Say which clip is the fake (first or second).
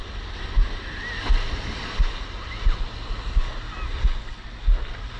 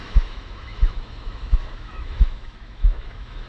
second